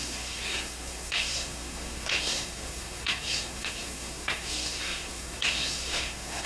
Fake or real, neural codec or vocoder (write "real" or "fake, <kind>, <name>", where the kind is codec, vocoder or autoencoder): fake, codec, SNAC